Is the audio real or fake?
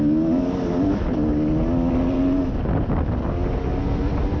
real